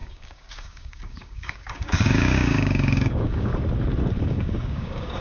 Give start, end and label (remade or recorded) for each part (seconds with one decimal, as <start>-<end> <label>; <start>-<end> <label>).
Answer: 0.0-3.5 remade; 3.5-4.2 recorded; 4.2-5.2 remade